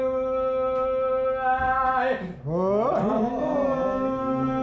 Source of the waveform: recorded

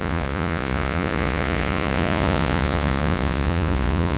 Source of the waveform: remade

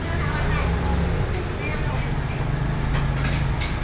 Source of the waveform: recorded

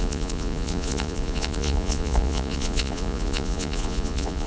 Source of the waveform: remade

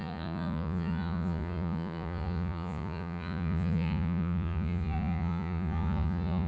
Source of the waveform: remade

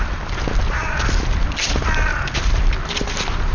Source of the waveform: recorded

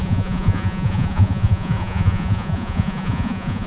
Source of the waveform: remade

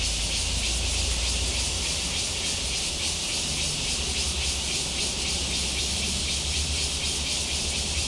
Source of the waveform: recorded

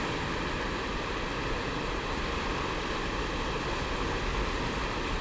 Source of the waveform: recorded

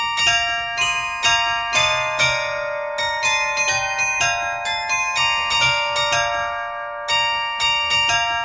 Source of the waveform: recorded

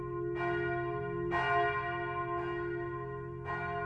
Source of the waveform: recorded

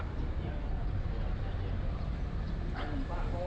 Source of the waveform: recorded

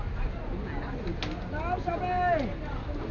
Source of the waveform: recorded